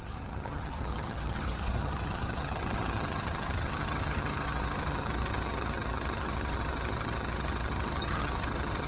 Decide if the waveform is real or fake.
fake